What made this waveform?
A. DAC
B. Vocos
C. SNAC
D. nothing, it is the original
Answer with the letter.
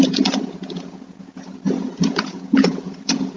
B